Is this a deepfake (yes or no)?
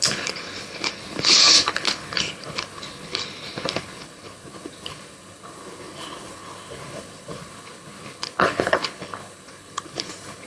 yes